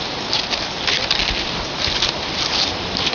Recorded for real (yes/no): yes